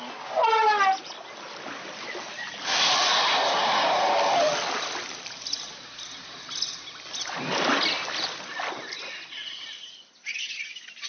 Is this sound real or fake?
real